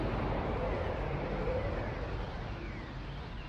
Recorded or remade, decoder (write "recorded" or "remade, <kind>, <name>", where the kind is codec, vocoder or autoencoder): recorded